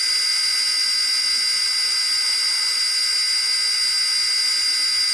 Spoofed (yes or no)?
no